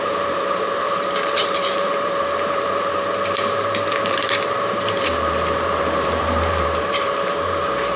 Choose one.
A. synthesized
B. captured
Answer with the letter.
A